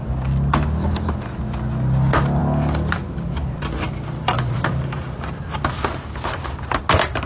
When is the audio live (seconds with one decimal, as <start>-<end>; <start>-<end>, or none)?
0.0-2.4; 6.8-7.3